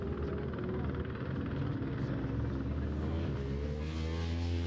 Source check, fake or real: real